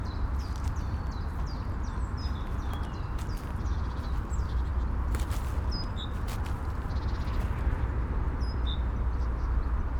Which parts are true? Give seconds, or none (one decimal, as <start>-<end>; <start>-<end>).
0.0-10.0